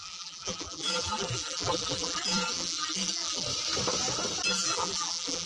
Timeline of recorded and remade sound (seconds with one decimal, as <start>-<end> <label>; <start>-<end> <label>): 0.0-3.5 remade; 3.5-4.5 recorded; 4.5-5.5 remade